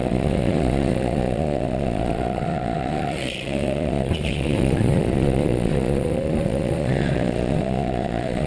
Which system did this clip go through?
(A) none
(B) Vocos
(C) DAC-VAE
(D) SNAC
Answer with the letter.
B